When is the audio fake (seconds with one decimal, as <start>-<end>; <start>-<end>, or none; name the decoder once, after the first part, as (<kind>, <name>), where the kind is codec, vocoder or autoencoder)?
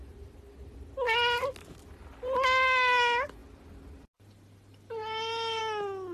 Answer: 3.4-5.6 (vocoder, BigVGAN v2)